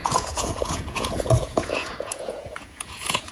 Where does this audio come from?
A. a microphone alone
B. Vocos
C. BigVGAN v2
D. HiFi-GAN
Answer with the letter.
B